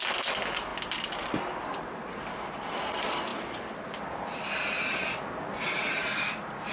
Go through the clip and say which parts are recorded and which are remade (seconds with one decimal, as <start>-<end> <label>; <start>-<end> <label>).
0.0-6.7 recorded